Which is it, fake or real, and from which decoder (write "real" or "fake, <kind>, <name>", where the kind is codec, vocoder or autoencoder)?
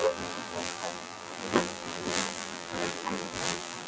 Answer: fake, vocoder, BigVGAN v2